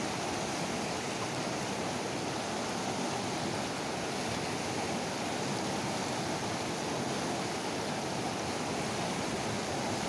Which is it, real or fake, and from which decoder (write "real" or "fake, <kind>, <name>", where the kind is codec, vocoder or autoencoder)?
real